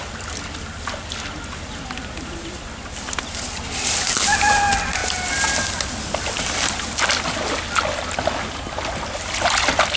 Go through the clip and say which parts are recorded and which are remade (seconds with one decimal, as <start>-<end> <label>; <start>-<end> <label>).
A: 0.0-10.0 recorded